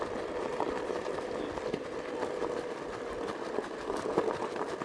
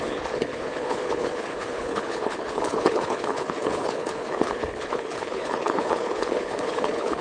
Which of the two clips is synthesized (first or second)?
second